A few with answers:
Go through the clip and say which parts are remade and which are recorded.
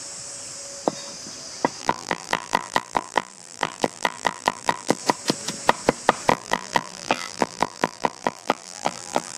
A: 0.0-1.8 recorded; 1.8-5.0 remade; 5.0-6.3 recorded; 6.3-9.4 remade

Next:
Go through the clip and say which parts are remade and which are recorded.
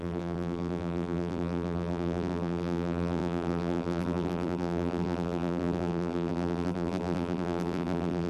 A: 0.0-8.3 remade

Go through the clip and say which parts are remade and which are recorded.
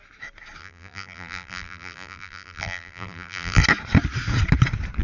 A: 0.0-0.6 recorded; 0.6-3.6 remade; 3.6-5.0 recorded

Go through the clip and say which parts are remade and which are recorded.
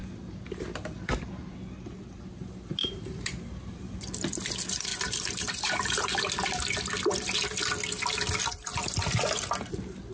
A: 0.0-2.8 recorded; 2.8-4.0 remade; 4.0-4.9 recorded; 4.9-6.2 remade; 6.2-10.1 recorded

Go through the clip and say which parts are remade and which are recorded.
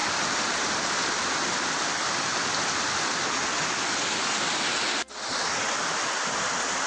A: 0.0-6.9 recorded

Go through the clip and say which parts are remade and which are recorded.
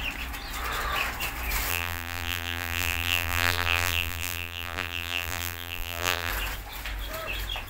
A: 0.0-1.7 recorded; 1.7-6.3 remade; 6.3-7.7 recorded